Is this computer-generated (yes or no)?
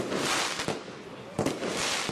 no